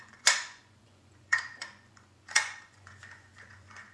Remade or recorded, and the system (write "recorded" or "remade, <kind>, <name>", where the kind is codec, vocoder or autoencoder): remade, vocoder, Vocos